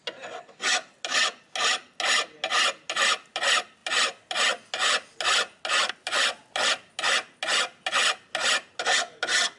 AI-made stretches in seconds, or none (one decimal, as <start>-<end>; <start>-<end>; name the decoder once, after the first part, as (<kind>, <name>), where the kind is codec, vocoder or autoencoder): none